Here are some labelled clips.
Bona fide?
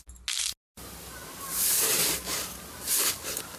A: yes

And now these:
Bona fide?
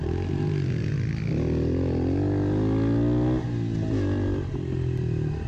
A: yes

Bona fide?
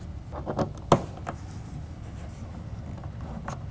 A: yes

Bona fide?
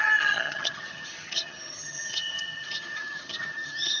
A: no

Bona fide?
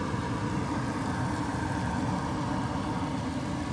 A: yes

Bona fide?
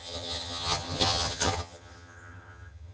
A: no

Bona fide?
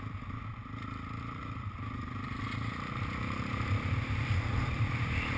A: no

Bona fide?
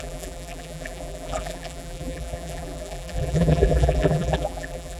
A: no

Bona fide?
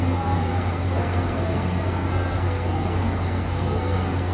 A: no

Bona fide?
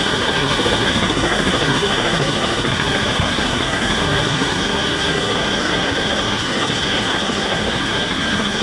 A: no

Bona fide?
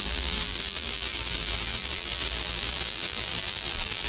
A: no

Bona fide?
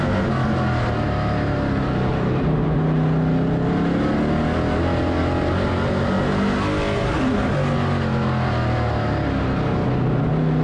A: yes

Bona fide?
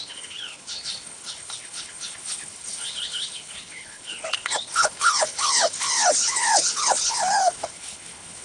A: no